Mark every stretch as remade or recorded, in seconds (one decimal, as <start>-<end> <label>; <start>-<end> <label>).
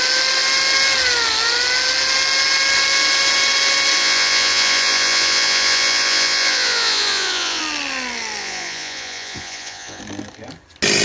0.0-4.0 recorded; 4.0-7.6 remade; 7.6-8.4 recorded; 8.4-10.0 remade; 10.0-11.0 recorded